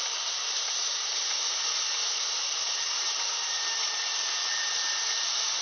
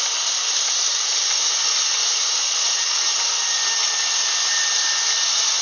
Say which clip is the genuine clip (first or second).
second